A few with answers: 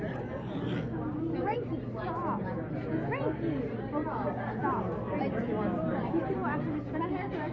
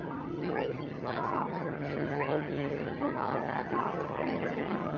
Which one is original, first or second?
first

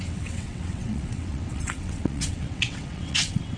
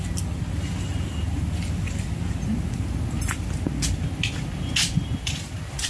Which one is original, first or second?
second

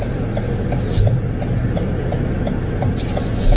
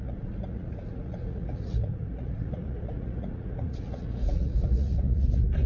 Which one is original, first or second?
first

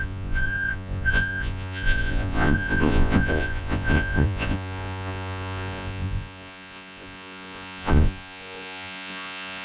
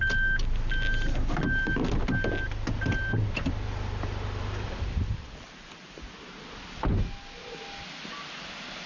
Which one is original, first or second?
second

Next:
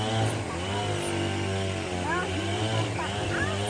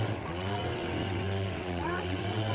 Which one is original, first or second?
first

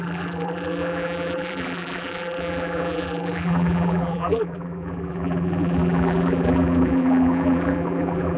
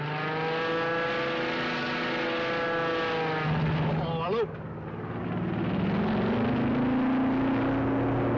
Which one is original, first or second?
second